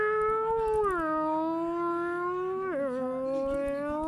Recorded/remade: recorded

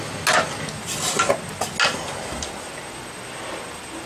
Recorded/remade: recorded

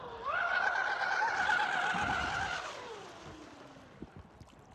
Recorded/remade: recorded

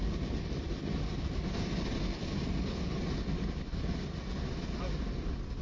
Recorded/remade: recorded